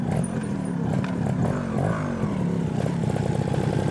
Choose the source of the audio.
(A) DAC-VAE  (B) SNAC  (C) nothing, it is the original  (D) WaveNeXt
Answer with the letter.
C